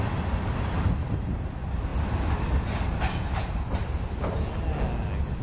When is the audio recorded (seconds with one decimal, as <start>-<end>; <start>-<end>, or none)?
0.0-5.4